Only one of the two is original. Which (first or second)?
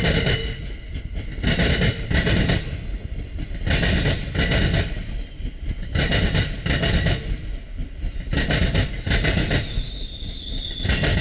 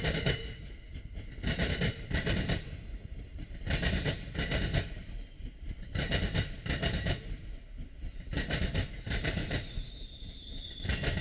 first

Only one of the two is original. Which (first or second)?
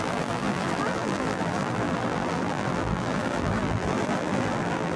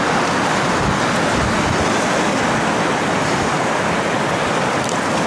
second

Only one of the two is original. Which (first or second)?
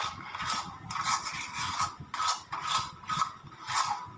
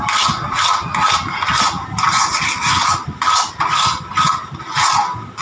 second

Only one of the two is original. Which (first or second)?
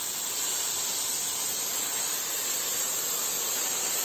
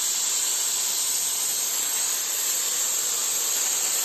second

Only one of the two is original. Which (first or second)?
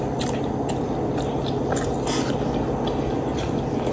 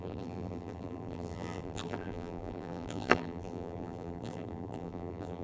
first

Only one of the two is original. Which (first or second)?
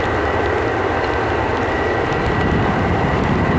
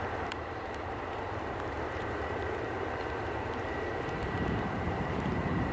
first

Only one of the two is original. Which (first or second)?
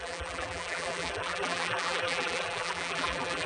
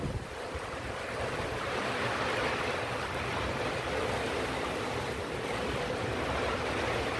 second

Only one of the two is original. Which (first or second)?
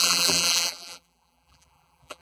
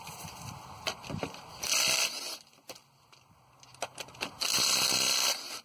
second